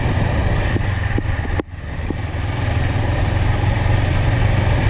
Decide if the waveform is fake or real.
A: fake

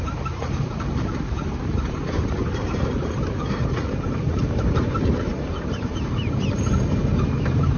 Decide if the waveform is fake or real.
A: fake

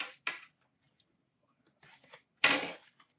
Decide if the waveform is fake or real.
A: real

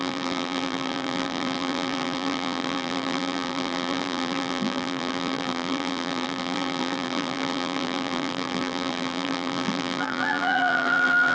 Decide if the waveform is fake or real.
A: fake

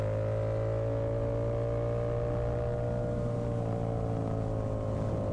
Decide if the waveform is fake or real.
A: real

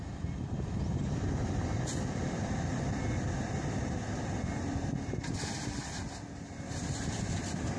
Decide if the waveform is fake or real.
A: fake